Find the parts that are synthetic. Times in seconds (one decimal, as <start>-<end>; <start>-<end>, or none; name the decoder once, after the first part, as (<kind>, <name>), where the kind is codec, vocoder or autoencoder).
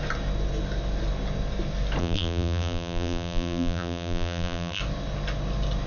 2.0-4.8 (vocoder, BigVGAN v2)